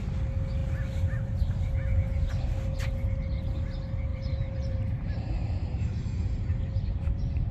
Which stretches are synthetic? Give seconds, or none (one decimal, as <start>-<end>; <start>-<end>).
4.1-6.6